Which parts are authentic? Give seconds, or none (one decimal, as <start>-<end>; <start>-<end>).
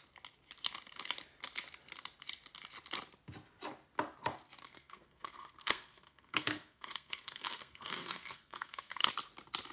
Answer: 0.0-4.6; 9.1-9.7